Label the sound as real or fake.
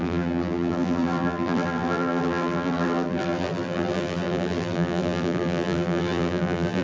fake